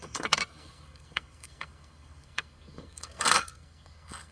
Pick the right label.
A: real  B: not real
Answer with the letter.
B